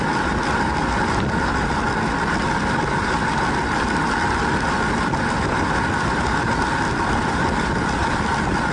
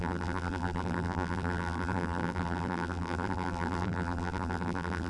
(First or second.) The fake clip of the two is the second